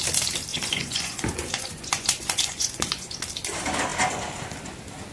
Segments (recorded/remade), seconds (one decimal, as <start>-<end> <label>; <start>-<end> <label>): 0.0-0.5 recorded; 0.5-3.2 remade; 3.2-5.1 recorded